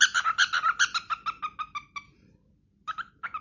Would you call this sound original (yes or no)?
yes